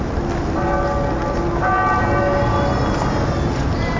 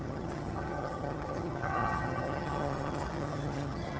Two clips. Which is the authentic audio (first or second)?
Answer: first